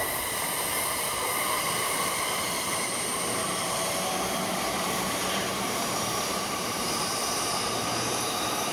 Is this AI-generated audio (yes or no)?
yes